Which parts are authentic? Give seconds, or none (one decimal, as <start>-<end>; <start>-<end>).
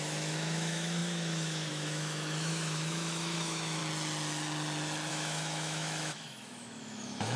3.8-5.1